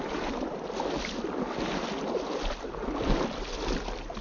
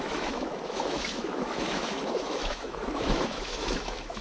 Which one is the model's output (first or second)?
second